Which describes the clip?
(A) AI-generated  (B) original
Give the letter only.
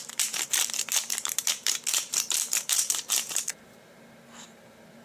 A